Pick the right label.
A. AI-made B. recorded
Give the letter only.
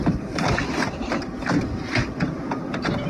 B